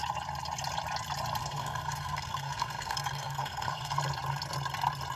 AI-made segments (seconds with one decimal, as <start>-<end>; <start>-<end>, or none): 1.4-4.0